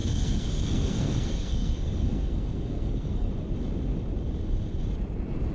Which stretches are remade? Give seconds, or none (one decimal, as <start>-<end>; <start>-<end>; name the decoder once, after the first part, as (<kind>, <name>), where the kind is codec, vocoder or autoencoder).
0.0-3.3 (codec, SNAC)